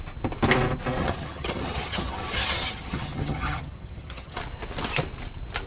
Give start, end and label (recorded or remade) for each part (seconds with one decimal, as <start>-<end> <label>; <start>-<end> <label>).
0.0-1.0 recorded; 1.0-4.4 remade; 4.4-5.7 recorded